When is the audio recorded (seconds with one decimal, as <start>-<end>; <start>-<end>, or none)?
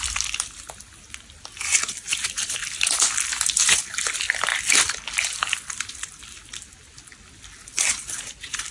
0.0-8.7